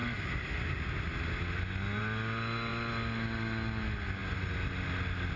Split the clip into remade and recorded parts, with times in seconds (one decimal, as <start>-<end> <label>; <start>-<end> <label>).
0.0-5.4 recorded